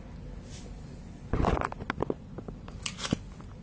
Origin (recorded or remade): recorded